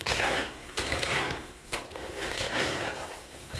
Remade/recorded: remade